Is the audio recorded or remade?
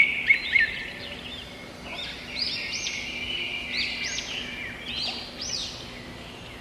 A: recorded